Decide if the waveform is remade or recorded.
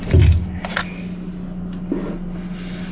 recorded